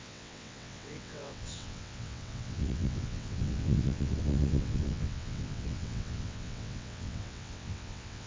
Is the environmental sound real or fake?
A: fake